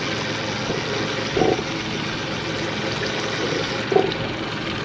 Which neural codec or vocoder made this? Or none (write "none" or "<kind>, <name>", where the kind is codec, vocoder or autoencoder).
none